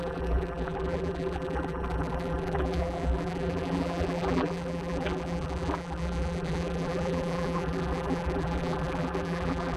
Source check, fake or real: fake